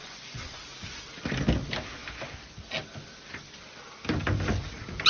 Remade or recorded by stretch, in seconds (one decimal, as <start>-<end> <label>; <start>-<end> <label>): 0.0-0.6 remade; 0.6-5.1 recorded